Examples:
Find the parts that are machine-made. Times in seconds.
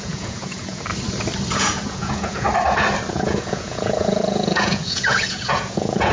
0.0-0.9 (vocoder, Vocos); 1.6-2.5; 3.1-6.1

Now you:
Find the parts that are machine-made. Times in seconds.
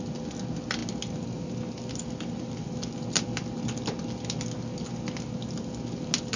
none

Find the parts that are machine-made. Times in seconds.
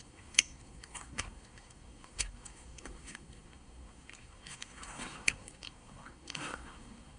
0.0-7.2 (codec, SNAC)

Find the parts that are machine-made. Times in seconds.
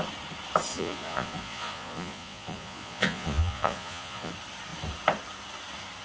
0.7-4.3 (vocoder, Vocos)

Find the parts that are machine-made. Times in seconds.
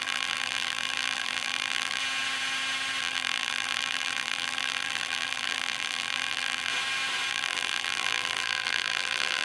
0.0-2.0 (vocoder, BigVGAN v2); 3.0-6.7; 7.3-9.4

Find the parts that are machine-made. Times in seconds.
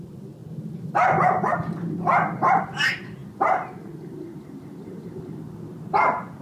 0.0-0.4 (vocoder, BigVGAN v2); 2.6-3.2; 4.4-6.4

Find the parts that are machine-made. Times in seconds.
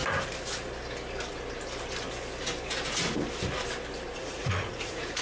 4.2-5.2 (vocoder, Vocos)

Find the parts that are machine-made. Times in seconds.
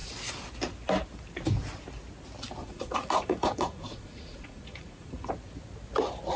2.6-5.3 (vocoder, Vocos)